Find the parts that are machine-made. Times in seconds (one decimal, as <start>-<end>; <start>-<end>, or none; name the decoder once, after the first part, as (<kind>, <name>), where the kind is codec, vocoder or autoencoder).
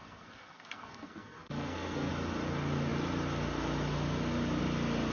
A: 0.0-2.1 (codec, SNAC)